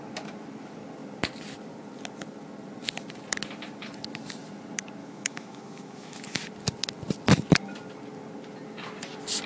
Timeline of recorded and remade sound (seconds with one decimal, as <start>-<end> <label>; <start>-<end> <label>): 0.0-5.0 recorded; 5.0-6.4 remade; 6.4-9.5 recorded